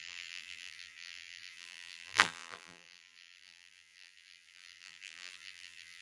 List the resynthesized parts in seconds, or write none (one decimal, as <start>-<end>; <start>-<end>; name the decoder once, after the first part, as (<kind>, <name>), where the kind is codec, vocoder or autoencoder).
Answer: 0.0-6.0 (vocoder, BigVGAN v2)